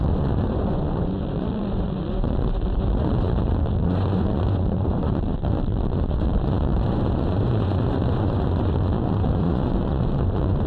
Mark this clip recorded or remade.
remade